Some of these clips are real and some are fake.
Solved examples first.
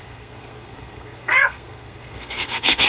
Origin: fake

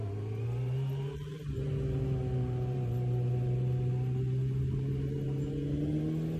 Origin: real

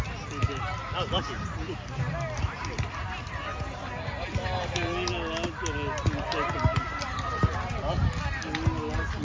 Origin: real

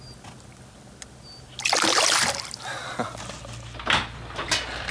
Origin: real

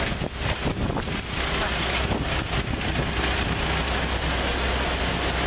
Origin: real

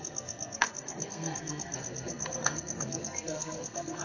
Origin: fake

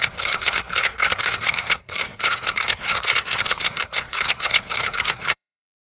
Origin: fake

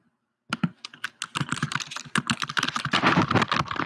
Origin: real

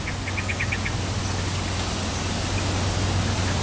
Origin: real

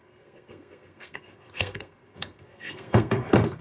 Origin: fake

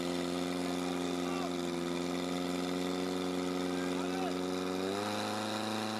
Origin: real